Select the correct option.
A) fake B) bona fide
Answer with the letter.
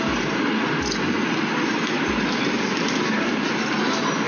B